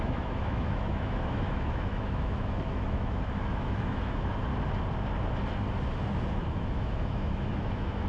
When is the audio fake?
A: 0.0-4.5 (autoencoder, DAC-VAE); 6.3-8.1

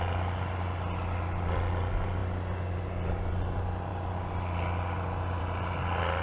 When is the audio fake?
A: none

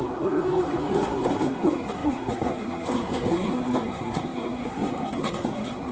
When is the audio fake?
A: 0.0-5.9 (codec, SNAC)

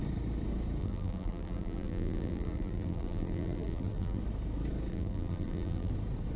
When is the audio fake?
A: 0.8-4.2 (vocoder, BigVGAN v2); 4.9-5.9

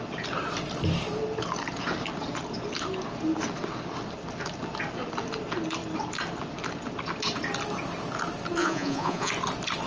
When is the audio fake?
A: 8.6-9.3 (vocoder, Vocos)

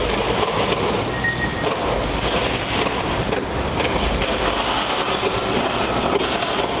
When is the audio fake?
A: none